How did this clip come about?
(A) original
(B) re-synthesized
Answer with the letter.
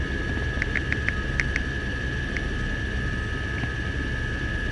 A